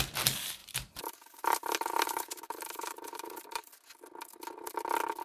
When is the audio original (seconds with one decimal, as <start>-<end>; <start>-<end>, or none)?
0.0-0.6; 3.7-5.2